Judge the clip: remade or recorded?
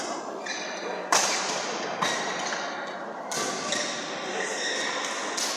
recorded